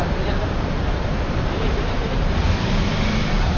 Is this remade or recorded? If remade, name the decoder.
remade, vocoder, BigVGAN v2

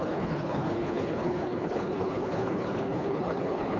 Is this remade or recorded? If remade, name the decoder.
remade, codec, HILCodec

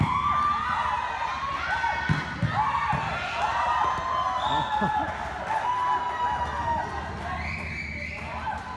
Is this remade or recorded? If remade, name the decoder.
recorded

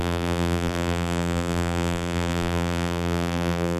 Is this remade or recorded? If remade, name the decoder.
remade, vocoder, BigVGAN v2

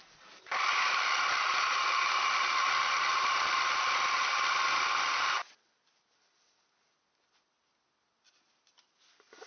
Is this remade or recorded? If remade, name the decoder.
recorded